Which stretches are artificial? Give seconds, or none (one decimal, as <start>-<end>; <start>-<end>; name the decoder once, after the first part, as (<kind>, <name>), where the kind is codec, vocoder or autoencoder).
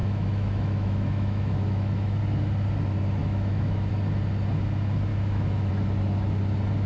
0.0-2.2 (autoencoder, DAC-VAE); 3.2-3.9; 5.1-5.7